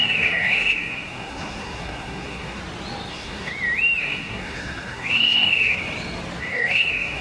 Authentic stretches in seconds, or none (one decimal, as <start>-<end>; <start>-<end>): 2.6-3.1; 3.5-4.0; 5.8-6.4

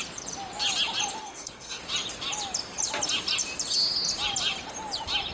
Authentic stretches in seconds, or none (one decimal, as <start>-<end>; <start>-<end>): 0.0-1.2; 1.8-5.3